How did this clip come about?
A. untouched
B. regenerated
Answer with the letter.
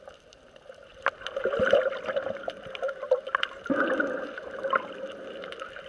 A